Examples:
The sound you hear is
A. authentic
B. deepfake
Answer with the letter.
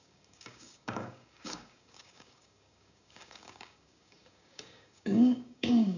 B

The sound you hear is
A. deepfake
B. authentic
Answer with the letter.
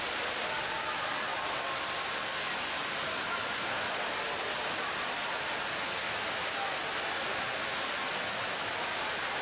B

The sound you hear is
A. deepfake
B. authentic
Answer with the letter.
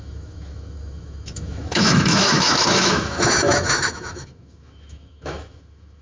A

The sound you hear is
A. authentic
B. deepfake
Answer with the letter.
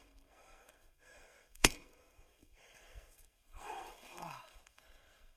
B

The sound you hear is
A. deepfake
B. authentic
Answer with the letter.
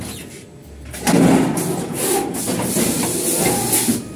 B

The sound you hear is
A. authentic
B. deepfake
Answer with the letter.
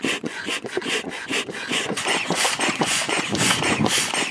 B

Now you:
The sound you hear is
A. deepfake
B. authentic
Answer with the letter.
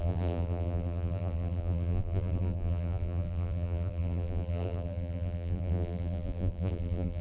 A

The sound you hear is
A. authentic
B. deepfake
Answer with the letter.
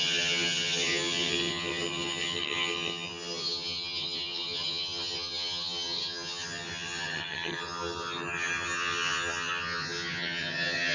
B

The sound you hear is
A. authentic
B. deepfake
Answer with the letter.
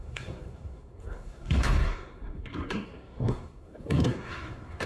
B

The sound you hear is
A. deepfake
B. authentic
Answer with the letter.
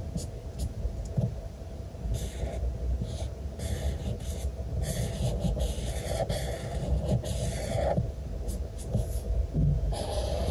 B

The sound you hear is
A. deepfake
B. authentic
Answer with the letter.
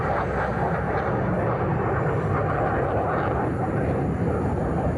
B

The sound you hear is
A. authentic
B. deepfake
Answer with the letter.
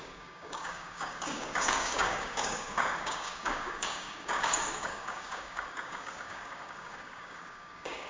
B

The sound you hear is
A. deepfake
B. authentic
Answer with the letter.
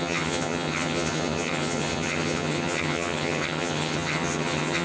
A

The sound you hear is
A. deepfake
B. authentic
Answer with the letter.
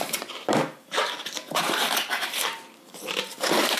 A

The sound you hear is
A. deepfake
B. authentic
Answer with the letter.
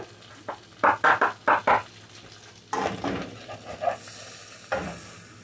B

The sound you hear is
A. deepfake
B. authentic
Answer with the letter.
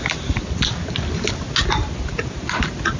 B